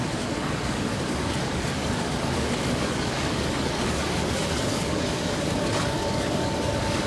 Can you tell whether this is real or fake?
fake